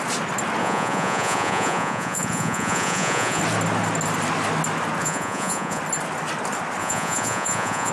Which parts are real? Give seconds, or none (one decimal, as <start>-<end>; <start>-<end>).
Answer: 0.0-0.6; 3.4-5.0; 5.8-6.8